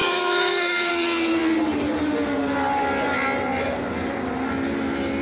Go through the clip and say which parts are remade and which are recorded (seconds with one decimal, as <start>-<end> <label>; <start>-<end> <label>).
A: 0.0-0.9 remade; 0.9-5.2 recorded